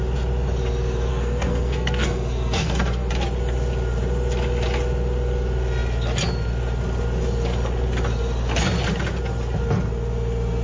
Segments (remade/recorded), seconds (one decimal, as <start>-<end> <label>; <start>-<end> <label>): 0.0-1.1 recorded; 1.1-3.1 remade; 3.1-10.6 recorded